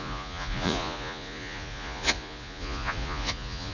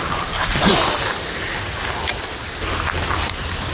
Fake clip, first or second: first